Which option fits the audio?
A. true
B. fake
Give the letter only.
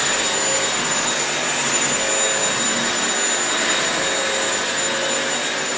A